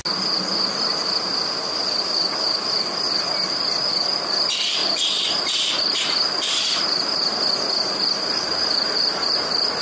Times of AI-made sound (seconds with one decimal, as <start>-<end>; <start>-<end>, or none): 4.8-9.8